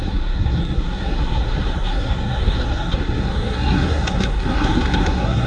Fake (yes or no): yes